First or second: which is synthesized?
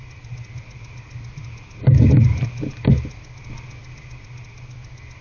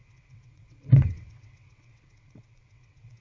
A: second